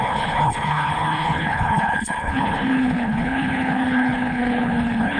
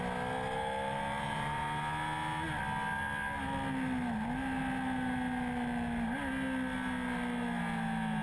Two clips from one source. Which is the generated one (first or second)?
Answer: first